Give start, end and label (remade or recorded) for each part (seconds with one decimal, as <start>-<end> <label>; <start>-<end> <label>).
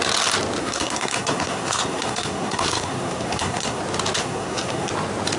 0.0-0.6 recorded; 0.6-3.8 remade; 3.8-4.2 recorded; 4.2-4.9 remade; 4.9-5.4 recorded